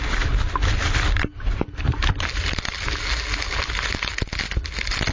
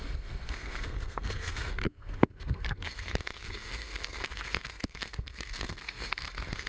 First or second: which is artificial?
second